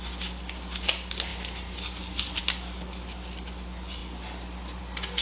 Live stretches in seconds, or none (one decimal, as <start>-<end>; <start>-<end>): 0.0-5.2

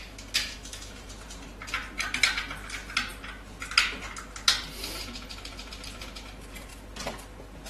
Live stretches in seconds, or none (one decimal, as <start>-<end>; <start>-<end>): 0.0-0.4; 1.1-7.7

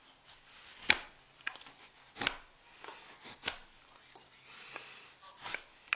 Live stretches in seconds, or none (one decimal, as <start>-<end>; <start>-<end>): 0.0-6.0

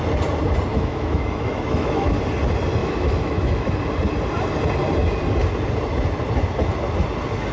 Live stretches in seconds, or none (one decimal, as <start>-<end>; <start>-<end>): 0.0-0.7; 2.2-2.8; 3.7-7.5

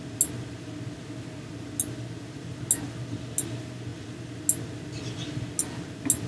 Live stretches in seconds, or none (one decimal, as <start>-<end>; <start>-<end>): 0.0-6.3

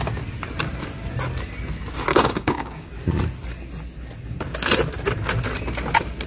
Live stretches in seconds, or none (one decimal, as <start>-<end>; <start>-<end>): 0.0-2.1; 2.9-6.3